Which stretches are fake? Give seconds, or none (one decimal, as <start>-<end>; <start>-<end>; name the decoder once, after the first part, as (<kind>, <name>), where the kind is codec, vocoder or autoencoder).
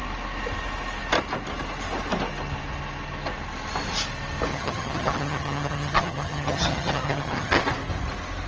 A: 4.5-7.6 (vocoder, HiFi-GAN)